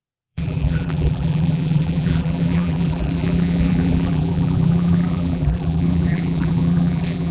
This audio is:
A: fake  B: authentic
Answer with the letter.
A